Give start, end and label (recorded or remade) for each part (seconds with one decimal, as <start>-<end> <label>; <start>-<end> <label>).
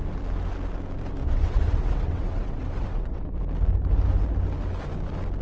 0.0-1.2 recorded; 1.2-3.4 remade; 3.4-5.4 recorded